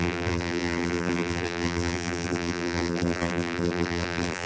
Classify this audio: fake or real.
fake